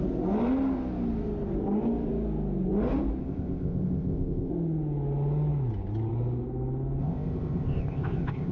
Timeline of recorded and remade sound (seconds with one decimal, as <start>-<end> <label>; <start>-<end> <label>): 0.0-3.2 recorded; 3.2-4.5 remade; 4.5-7.0 recorded; 7.0-8.5 remade